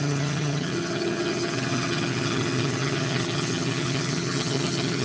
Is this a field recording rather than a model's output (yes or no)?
no